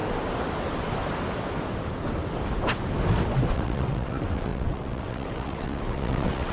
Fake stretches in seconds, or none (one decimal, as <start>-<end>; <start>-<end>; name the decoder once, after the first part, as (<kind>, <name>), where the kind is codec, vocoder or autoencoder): 3.5-6.5 (vocoder, WaveNeXt)